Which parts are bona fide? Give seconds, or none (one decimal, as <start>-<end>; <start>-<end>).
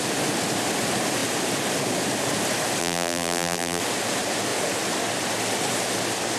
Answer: 0.0-2.8; 3.8-6.4